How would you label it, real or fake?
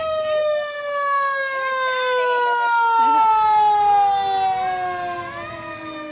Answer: real